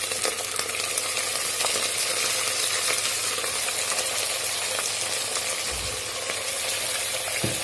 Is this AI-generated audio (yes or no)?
no